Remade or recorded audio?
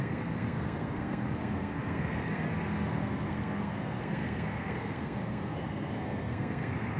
remade